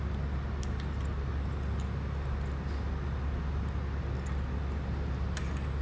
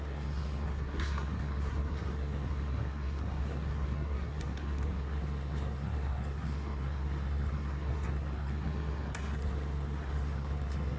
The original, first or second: first